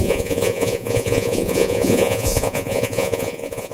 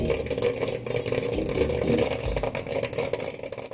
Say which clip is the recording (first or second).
second